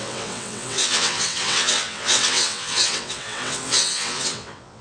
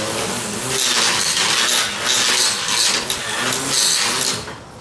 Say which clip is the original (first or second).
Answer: second